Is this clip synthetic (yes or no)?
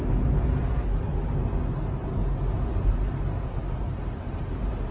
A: no